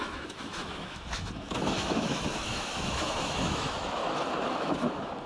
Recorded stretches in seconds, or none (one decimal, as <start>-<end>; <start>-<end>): 4.0-4.5